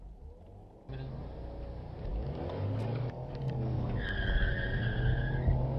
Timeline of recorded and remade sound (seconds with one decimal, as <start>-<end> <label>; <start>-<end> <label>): 0.0-2.1 recorded; 2.1-4.5 remade; 4.5-5.8 recorded